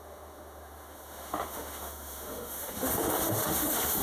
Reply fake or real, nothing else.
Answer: fake